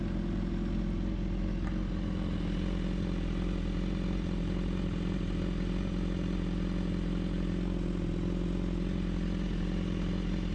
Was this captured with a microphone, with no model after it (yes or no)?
yes